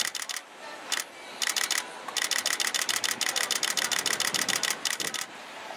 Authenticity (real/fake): real